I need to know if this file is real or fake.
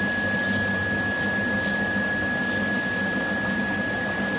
real